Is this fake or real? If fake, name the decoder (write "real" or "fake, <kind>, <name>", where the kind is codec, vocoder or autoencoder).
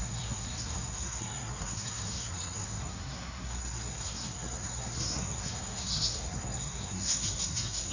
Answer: fake, codec, SNAC